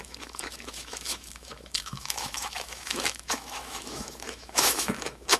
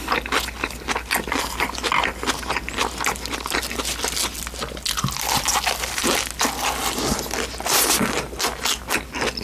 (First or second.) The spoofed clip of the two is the first